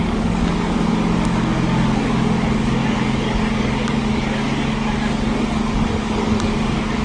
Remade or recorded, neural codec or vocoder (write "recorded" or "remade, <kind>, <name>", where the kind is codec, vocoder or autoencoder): remade, codec, DAC